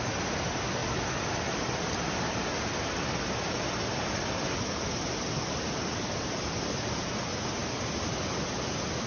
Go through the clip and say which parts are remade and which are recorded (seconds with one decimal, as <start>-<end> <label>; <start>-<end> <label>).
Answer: 0.0-9.1 recorded